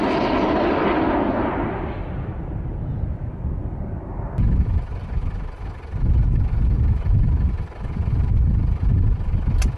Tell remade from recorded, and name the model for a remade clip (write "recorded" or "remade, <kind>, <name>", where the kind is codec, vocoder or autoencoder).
recorded